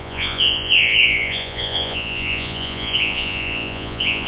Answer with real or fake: fake